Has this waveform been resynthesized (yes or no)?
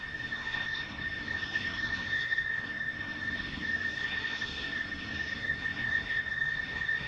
yes